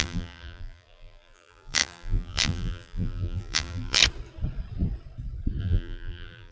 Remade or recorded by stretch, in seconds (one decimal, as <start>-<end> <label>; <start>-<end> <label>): 0.0-4.0 remade; 4.0-5.6 recorded; 5.6-6.5 remade